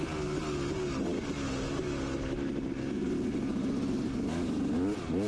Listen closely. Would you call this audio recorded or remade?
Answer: recorded